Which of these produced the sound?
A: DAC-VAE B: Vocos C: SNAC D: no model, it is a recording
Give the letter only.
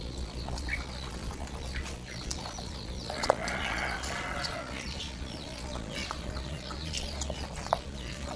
B